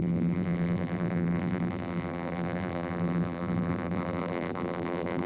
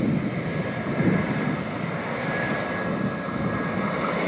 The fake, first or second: first